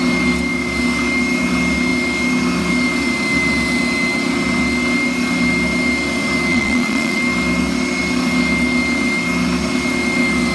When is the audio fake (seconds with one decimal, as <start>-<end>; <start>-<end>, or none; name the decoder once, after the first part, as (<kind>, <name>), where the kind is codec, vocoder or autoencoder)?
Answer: 6.5-7.2 (vocoder, Vocos)